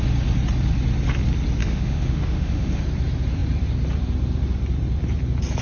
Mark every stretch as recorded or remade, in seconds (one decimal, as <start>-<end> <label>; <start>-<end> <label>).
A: 0.0-1.6 recorded; 1.6-2.8 remade; 2.8-5.6 recorded